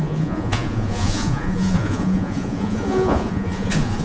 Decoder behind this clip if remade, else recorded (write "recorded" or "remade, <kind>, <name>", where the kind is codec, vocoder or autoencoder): remade, vocoder, Vocos